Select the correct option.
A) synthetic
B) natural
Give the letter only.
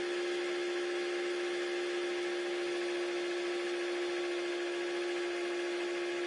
B